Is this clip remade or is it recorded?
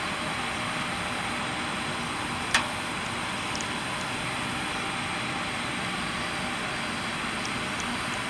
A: recorded